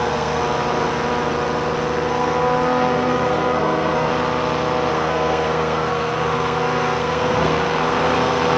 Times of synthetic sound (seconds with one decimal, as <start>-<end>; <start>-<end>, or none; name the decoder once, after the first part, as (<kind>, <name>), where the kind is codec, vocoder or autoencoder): 0.0-0.4 (codec, SNAC); 2.1-4.1; 4.9-8.6